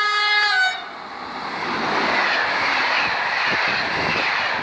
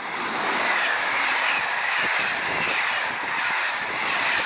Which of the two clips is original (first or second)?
first